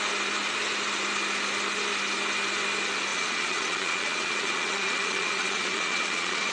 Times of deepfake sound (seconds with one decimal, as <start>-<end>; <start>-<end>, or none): 3.1-6.5